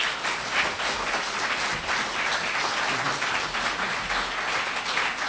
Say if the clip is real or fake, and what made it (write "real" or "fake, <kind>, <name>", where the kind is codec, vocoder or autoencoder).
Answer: real